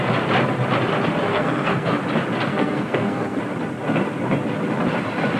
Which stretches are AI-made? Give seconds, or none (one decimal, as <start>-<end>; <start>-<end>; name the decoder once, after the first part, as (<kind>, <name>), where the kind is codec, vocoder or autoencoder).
1.3-2.0 (codec, SNAC); 2.5-3.4